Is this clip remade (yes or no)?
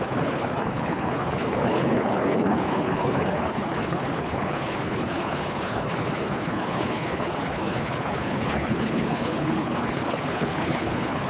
yes